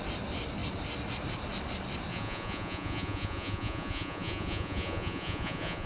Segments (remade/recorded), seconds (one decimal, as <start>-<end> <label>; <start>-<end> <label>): 0.0-2.1 recorded; 2.1-5.9 remade